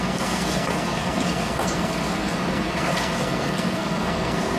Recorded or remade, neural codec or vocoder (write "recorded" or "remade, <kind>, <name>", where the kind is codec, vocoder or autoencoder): remade, codec, SNAC